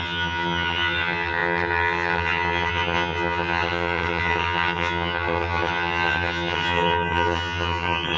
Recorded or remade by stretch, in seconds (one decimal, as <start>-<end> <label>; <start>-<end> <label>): 0.0-8.2 remade